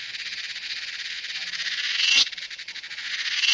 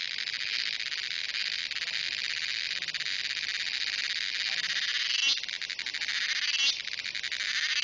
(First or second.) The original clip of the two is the second